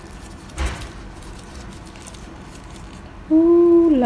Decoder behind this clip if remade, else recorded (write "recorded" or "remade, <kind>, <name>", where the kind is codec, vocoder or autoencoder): recorded